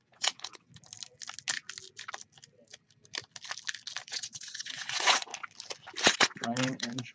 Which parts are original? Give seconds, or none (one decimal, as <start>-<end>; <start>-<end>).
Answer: 0.7-4.0; 5.3-6.0